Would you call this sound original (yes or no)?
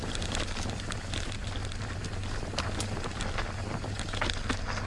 yes